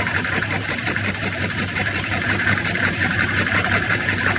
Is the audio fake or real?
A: fake